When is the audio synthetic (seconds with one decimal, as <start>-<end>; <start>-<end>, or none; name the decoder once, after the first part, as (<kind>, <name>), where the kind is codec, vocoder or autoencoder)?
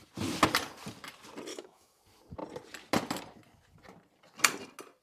1.5-2.0 (autoencoder, DAC-VAE)